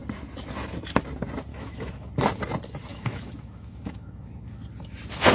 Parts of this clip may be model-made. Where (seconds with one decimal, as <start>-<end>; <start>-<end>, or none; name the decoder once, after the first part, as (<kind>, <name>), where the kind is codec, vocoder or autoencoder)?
1.5-2.1 (autoencoder, DAC-VAE); 2.9-4.3